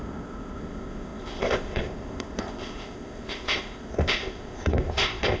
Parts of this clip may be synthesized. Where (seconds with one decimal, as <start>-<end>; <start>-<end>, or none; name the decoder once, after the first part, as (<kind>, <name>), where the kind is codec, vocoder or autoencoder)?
0.0-5.4 (codec, ZipCodec)

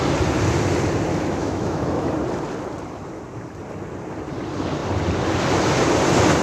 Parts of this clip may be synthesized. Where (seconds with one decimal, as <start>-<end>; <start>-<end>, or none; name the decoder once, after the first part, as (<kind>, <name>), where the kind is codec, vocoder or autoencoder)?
1.1-2.1 (autoencoder, DAC-VAE)